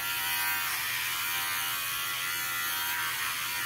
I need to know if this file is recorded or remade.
remade